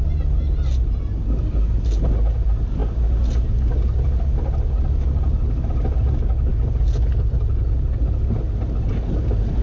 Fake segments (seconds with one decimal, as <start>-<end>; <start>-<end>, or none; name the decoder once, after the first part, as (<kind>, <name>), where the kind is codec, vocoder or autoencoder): none